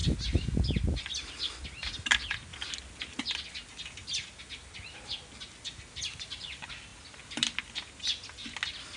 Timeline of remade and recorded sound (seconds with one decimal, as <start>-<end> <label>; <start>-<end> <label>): 0.0-9.0 recorded